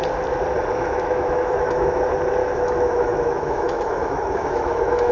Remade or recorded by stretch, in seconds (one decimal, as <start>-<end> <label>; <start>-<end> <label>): 0.0-0.7 recorded; 0.7-2.0 remade; 2.0-2.4 recorded; 2.4-5.1 remade